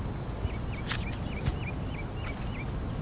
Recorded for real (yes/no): yes